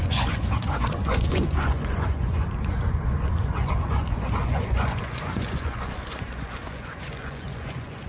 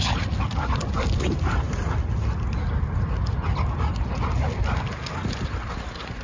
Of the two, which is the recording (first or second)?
second